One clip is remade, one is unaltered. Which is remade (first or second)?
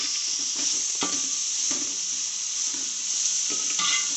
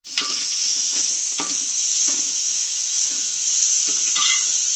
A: second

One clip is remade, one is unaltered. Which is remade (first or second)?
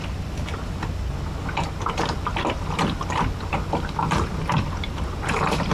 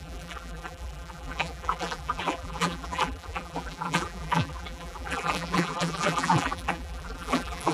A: second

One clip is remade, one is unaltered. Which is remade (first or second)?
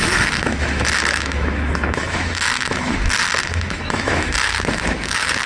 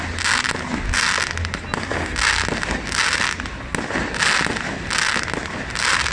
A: first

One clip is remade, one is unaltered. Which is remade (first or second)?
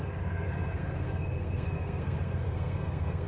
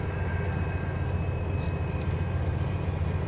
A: first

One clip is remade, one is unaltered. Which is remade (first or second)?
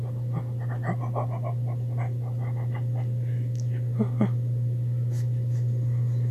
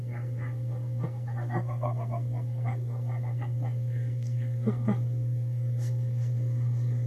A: second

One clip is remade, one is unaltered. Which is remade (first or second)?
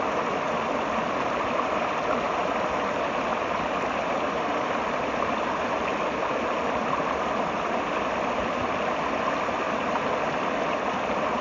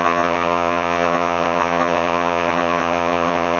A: second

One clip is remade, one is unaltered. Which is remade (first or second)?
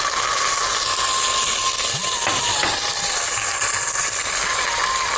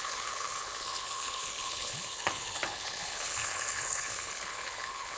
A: second